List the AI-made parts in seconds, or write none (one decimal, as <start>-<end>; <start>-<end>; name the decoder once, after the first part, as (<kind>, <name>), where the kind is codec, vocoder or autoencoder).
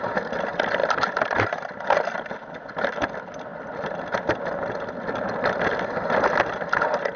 0.8-1.5 (vocoder, BigVGAN v2)